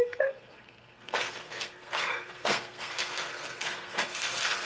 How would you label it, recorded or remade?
remade